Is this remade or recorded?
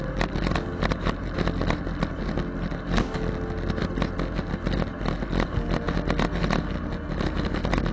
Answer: recorded